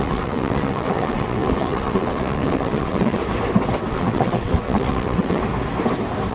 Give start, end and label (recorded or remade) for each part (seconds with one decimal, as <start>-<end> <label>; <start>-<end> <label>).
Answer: 0.0-3.2 remade; 3.2-3.9 recorded; 3.9-5.4 remade; 5.4-6.3 recorded

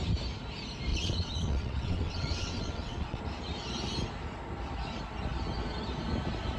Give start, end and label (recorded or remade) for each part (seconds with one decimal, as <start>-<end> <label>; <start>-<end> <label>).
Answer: 0.0-0.9 recorded; 0.9-3.2 remade; 3.2-6.6 recorded

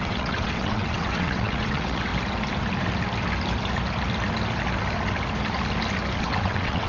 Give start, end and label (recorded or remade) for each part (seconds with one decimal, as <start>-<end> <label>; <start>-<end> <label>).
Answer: 0.0-2.1 remade; 2.1-6.2 recorded; 6.2-6.9 remade

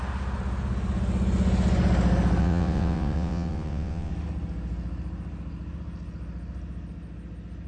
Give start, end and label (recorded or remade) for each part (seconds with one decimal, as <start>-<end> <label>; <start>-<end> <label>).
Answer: 0.0-2.4 recorded; 2.4-4.1 remade; 4.1-7.7 recorded

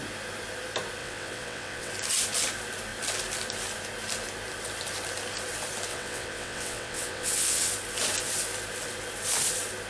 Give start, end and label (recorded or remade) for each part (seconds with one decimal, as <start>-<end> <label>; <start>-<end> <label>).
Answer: 0.0-1.0 recorded; 1.0-1.9 remade; 1.9-5.9 recorded; 5.9-7.7 remade; 7.7-9.9 recorded